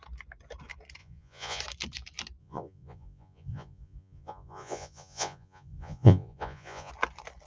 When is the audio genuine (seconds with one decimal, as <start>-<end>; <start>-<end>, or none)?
0.0-1.0; 1.6-2.4; 6.9-7.5